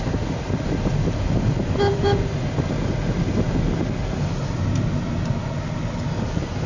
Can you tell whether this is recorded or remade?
recorded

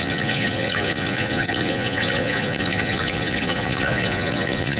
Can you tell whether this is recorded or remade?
remade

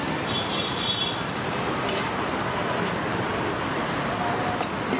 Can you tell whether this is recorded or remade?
recorded